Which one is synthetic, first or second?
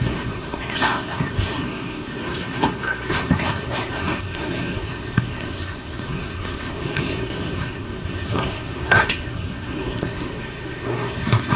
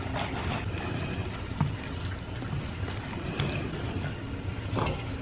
first